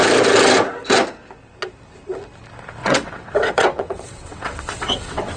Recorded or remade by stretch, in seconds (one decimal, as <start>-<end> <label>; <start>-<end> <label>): 0.0-2.8 recorded; 2.8-5.4 remade